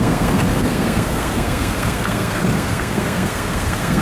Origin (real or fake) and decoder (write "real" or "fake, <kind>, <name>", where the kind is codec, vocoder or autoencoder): fake, codec, SNAC